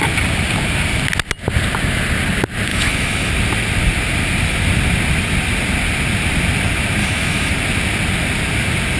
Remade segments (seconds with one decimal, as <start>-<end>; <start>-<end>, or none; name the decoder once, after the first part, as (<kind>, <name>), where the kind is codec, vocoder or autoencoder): 2.7-3.3 (autoencoder, DAC-VAE); 7.0-7.5